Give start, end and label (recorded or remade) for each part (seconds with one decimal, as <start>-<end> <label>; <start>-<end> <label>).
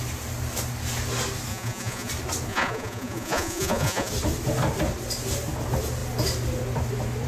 0.0-1.5 recorded; 1.5-2.1 remade; 2.1-2.5 recorded; 2.5-4.1 remade; 4.1-7.3 recorded